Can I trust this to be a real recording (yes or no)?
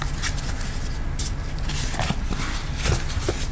yes